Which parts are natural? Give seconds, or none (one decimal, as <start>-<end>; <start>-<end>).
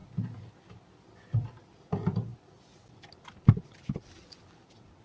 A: 0.0-5.0